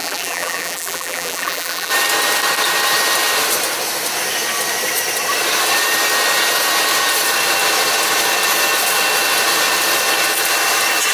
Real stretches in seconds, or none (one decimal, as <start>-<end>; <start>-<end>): 1.9-11.1